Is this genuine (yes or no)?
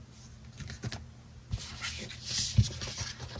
yes